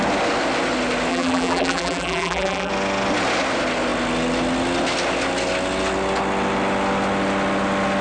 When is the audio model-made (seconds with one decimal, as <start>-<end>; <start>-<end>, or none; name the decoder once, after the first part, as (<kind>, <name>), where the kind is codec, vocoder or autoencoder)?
1.1-2.7 (vocoder, BigVGAN v2)